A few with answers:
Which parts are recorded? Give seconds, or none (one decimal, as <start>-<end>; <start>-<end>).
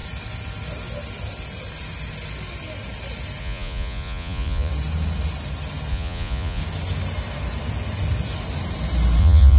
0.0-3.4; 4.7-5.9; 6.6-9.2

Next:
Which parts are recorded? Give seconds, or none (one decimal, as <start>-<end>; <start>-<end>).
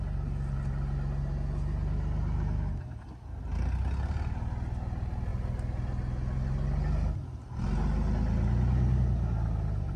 0.0-10.0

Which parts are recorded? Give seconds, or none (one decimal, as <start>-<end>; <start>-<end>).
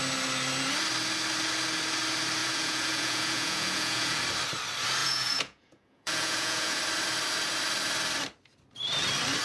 0.0-2.4; 4.2-5.0; 6.8-9.4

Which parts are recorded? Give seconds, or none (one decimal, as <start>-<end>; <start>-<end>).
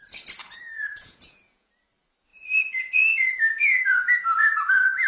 0.0-0.4; 1.7-2.3